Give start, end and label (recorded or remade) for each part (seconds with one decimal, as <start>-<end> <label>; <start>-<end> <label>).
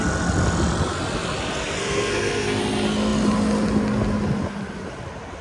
0.0-1.8 recorded; 1.8-2.6 remade; 2.6-5.4 recorded